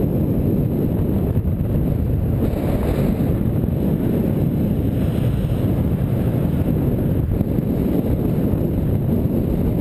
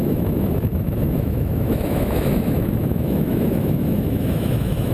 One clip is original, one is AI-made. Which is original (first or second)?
first